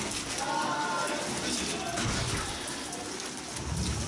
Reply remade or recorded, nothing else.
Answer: recorded